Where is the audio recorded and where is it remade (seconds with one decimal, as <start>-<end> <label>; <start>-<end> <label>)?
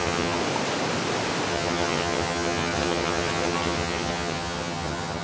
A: 0.0-0.4 remade; 0.4-1.5 recorded; 1.5-5.2 remade